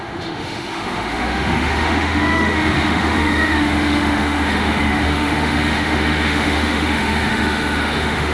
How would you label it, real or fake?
fake